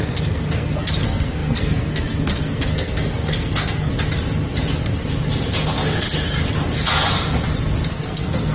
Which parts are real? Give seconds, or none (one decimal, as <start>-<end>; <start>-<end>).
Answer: 3.9-7.9